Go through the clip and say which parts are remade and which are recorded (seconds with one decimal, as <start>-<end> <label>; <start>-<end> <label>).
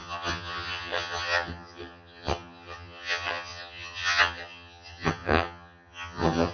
0.0-6.5 remade